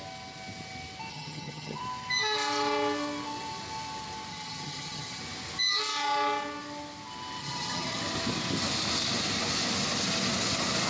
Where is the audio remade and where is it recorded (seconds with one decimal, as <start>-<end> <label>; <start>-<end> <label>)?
0.0-1.1 recorded; 1.1-1.8 remade; 1.8-4.3 recorded; 4.3-5.2 remade; 5.2-7.4 recorded; 7.4-8.0 remade; 8.0-10.9 recorded